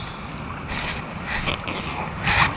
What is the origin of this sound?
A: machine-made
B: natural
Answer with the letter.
B